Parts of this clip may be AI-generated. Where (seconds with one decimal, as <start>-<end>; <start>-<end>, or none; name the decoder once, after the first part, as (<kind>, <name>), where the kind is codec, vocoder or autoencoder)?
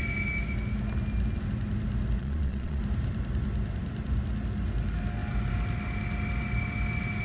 2.2-2.8 (vocoder, Vocos)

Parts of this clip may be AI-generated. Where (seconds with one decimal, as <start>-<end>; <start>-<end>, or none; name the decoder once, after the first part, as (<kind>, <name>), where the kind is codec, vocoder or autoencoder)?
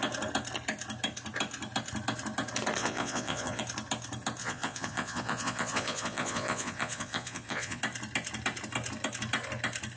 2.8-3.6 (vocoder, Vocos); 4.4-7.8